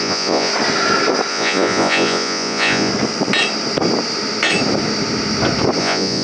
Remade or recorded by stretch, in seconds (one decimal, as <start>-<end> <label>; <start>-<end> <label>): 0.0-0.5 remade; 0.5-1.3 recorded; 1.3-2.9 remade; 2.9-5.8 recorded; 5.8-6.2 remade